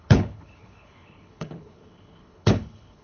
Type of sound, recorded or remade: remade